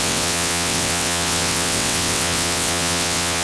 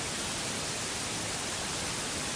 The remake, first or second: first